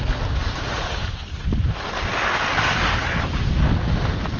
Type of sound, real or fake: real